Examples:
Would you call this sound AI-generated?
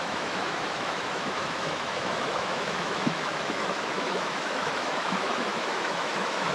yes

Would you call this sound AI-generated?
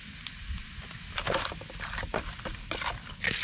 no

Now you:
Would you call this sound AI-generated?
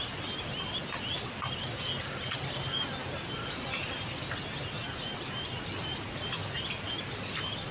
no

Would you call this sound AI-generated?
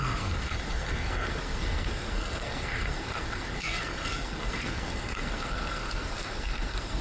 yes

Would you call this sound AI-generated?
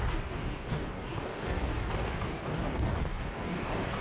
yes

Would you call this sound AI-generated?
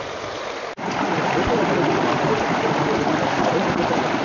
no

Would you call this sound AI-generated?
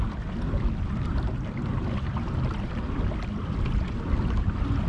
no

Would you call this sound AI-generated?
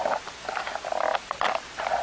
no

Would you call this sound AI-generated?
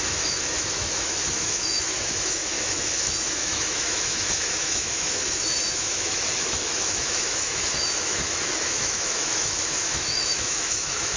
yes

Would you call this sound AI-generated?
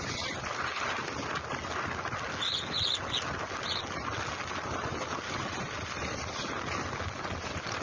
no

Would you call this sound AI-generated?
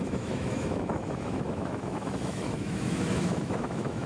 yes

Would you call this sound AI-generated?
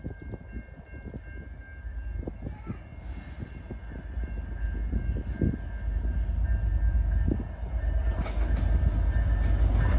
no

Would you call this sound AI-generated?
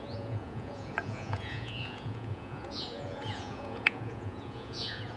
yes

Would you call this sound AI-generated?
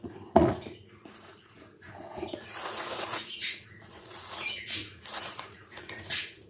yes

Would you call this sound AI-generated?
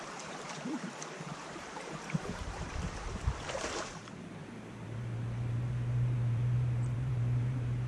yes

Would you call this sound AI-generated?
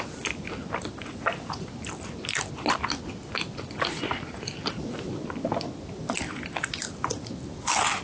no